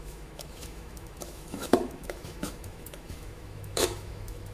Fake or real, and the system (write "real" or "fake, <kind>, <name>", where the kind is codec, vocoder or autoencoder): fake, autoencoder, DAC-VAE